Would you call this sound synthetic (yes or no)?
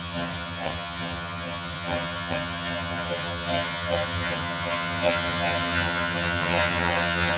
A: yes